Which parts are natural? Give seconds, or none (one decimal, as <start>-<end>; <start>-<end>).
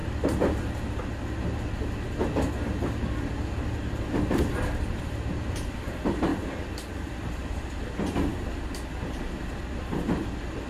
0.0-5.0; 6.3-6.9; 8.3-9.8